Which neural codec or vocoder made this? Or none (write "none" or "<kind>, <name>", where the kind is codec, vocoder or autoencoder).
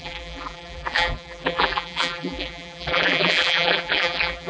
vocoder, BigVGAN v2